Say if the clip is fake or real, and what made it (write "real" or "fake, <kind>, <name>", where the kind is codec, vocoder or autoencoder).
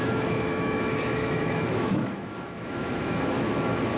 fake, autoencoder, DAC-VAE